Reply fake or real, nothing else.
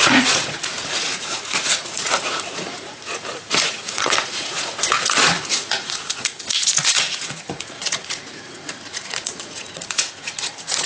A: fake